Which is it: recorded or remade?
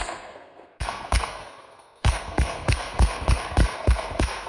remade